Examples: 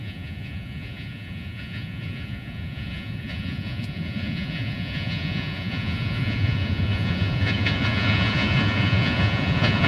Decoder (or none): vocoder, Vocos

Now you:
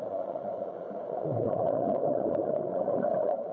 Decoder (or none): vocoder, Vocos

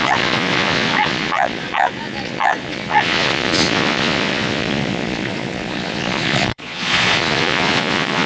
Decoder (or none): vocoder, Vocos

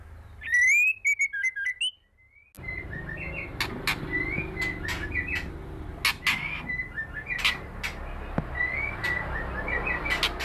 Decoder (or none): none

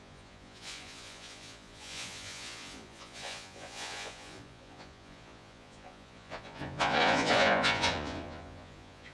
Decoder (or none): vocoder, Vocos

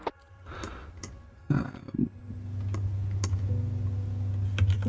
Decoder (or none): none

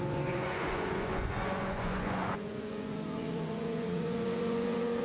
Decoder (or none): vocoder, Vocos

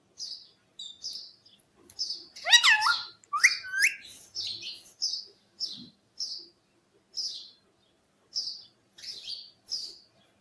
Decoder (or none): none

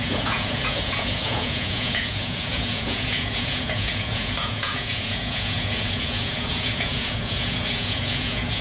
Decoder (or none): vocoder, Vocos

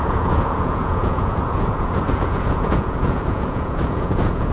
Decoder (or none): vocoder, Vocos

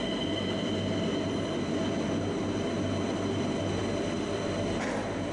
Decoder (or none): none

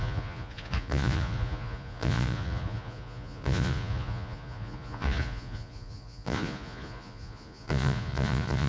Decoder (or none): vocoder, Vocos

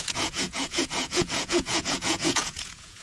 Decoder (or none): vocoder, Vocos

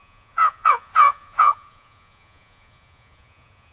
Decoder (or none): vocoder, Vocos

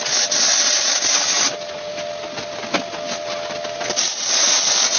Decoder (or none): none